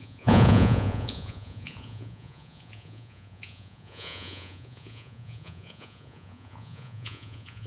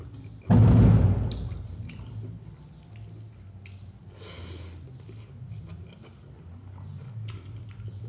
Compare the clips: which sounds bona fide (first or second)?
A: second